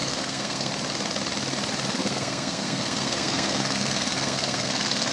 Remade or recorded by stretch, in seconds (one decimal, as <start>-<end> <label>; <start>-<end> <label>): 0.0-0.7 remade; 0.7-2.0 recorded; 2.0-5.1 remade